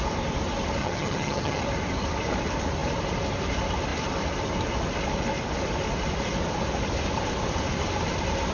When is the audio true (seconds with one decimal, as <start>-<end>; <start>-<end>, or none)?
0.0-0.8; 1.6-8.5